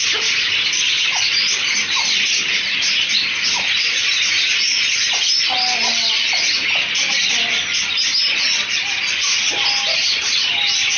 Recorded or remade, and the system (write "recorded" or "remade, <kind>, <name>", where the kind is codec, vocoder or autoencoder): recorded